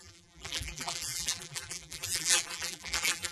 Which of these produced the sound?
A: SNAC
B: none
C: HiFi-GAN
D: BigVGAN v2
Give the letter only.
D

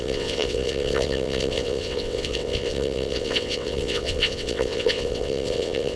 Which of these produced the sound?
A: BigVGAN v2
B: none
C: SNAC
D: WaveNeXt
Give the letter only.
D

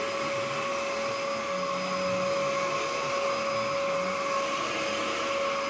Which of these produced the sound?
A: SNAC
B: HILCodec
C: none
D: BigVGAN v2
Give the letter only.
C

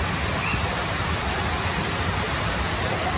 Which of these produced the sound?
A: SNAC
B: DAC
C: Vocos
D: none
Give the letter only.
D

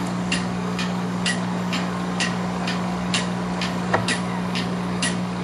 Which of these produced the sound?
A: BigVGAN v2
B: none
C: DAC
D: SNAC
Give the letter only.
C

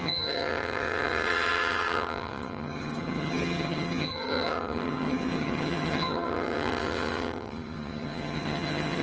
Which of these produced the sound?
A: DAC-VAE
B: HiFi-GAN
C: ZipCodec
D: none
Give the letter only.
B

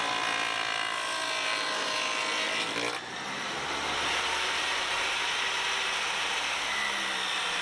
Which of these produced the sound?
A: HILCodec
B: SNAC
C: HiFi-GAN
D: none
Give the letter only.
D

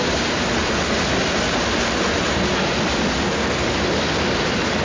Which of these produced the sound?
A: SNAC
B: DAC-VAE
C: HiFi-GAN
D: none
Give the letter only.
D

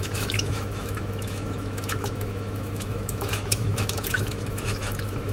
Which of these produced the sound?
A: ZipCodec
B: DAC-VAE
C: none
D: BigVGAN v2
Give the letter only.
B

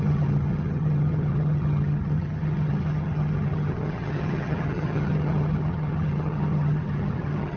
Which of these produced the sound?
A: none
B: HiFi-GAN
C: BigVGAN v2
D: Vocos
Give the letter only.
B